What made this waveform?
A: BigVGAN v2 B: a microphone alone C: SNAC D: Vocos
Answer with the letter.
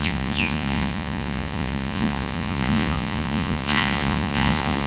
D